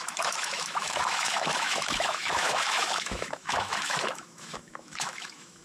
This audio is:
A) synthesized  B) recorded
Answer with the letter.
A